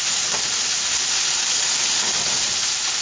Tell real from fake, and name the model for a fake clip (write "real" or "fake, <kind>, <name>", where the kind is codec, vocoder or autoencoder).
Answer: real